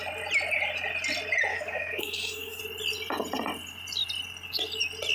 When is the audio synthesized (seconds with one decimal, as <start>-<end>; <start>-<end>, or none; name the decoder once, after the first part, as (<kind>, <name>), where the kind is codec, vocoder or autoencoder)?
1.5-2.6 (codec, DAC)